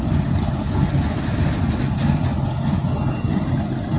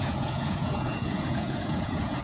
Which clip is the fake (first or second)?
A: second